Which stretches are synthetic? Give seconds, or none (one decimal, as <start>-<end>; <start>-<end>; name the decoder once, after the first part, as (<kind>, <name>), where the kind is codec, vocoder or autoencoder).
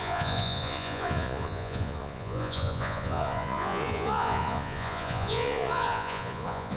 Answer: 0.0-6.8 (vocoder, Vocos)